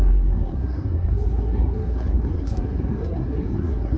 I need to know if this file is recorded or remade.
remade